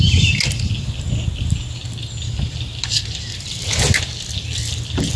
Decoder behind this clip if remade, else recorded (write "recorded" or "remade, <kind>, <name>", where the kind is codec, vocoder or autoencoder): recorded